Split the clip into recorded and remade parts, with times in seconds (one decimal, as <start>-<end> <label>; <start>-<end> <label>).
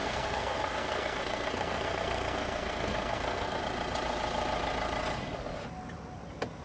0.0-3.6 remade; 3.6-6.6 recorded